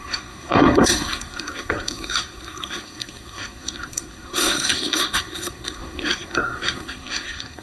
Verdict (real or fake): fake